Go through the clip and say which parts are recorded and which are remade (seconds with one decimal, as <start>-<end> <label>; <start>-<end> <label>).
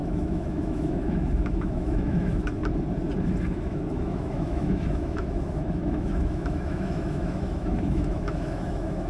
0.0-2.6 remade; 2.6-3.5 recorded; 3.5-9.1 remade